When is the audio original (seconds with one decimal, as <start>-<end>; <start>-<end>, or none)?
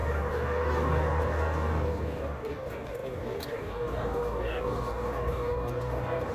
none